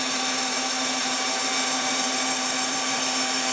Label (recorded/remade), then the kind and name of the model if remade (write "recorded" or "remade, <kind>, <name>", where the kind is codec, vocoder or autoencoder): remade, vocoder, BigVGAN v2